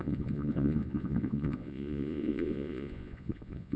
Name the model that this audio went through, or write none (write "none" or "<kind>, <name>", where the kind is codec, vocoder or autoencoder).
vocoder, Vocos